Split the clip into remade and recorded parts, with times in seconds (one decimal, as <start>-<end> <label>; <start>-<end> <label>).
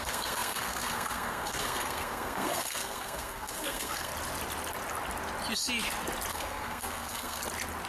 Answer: 0.0-4.1 remade; 4.1-6.3 recorded; 6.3-7.4 remade; 7.4-7.9 recorded